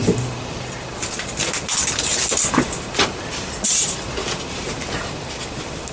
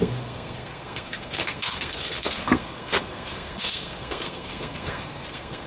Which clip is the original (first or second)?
first